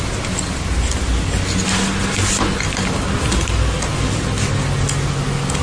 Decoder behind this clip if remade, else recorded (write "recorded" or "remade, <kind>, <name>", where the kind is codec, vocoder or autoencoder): recorded